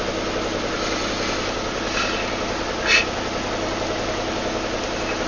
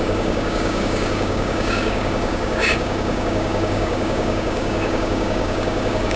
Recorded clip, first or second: first